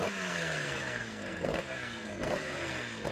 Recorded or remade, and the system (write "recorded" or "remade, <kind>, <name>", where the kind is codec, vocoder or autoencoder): remade, codec, SNAC